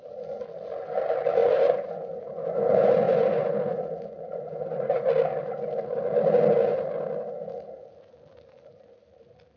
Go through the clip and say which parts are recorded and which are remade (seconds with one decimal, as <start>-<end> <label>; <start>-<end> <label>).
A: 0.0-1.4 recorded; 1.4-5.1 remade; 5.1-9.6 recorded